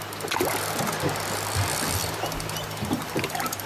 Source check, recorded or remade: recorded